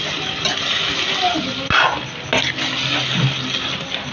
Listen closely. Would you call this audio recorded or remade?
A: recorded